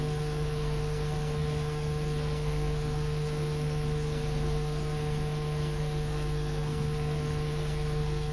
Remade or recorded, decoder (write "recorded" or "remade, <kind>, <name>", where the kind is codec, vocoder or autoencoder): remade, codec, SNAC